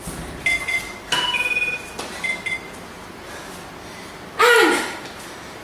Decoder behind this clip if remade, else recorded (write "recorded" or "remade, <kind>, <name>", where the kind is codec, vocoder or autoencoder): recorded